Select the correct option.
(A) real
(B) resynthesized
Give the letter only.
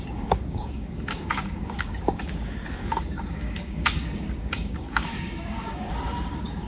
B